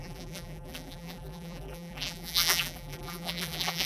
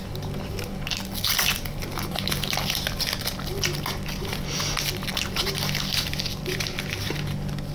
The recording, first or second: second